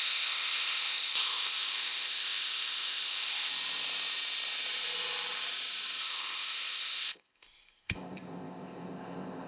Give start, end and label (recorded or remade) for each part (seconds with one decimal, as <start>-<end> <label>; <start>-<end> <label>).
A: 0.0-3.5 remade; 3.5-6.0 recorded; 6.0-9.5 remade